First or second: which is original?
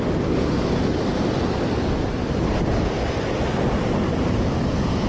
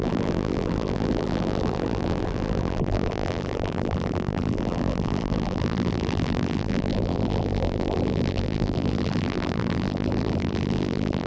first